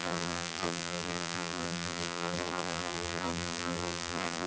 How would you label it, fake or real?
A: fake